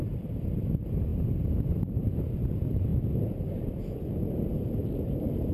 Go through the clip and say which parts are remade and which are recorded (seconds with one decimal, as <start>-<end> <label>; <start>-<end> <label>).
0.0-1.1 remade; 1.1-1.7 recorded; 1.7-5.5 remade

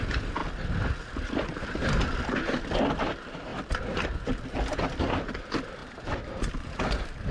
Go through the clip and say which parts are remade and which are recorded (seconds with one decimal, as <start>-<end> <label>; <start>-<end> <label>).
0.0-0.4 remade; 0.4-1.1 recorded; 1.1-7.3 remade

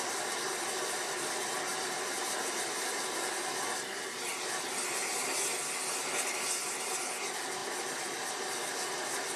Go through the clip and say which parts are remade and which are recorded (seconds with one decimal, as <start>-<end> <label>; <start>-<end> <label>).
0.0-1.7 recorded; 1.7-3.3 remade; 3.3-9.4 recorded

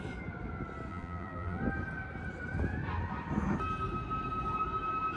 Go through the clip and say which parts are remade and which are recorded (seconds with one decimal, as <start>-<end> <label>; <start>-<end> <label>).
0.0-0.9 recorded; 0.9-1.6 remade; 1.6-5.2 recorded